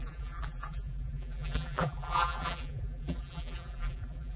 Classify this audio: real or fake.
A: fake